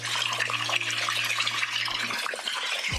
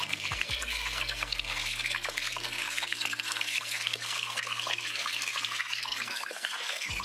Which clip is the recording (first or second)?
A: first